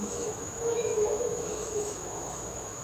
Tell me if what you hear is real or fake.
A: fake